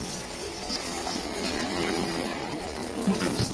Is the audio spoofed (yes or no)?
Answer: yes